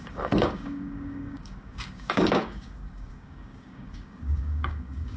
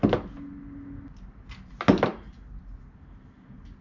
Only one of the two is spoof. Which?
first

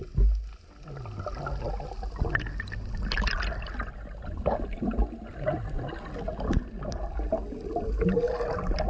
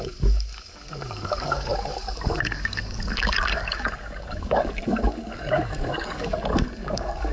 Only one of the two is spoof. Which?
second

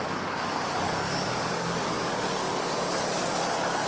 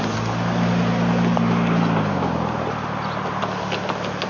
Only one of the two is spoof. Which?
first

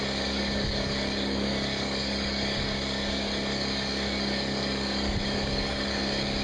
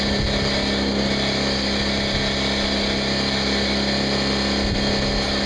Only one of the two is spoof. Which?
first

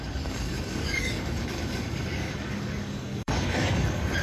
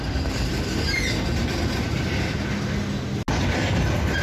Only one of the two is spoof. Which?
first